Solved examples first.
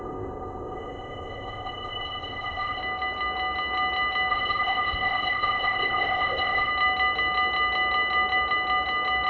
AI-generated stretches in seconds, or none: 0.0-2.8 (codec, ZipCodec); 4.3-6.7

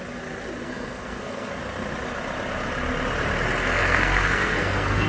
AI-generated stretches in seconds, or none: 0.6-1.6 (codec, SNAC); 3.6-5.1

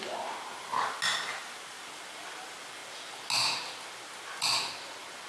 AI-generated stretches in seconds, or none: none

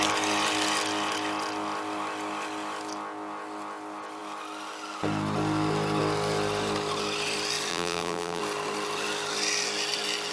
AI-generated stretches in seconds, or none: 7.7-8.4 (vocoder, BigVGAN v2)

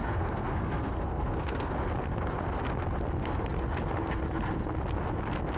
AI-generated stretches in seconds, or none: 0.0-1.7 (codec, SNAC)

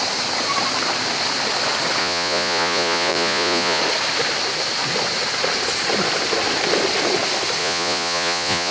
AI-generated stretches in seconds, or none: 2.0-3.8 (vocoder, Vocos); 7.6-8.7

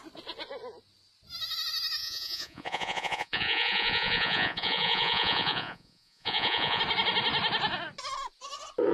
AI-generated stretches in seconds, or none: 2.0-6.8 (vocoder, Vocos)

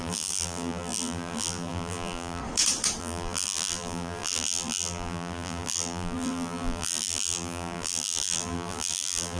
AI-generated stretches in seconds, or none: 0.0-2.4 (vocoder, BigVGAN v2); 3.0-9.4